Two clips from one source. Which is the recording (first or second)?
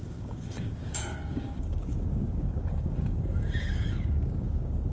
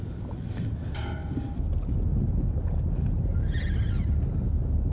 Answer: second